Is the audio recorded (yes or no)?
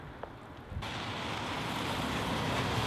yes